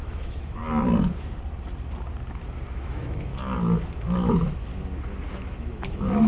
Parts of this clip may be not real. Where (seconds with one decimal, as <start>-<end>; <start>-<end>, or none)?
0.0-0.6; 2.8-3.3; 4.3-4.7; 5.4-6.3